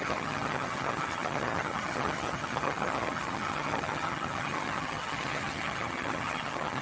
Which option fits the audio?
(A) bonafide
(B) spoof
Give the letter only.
B